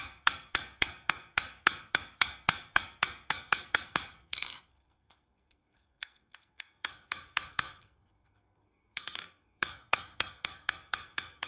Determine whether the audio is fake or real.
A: fake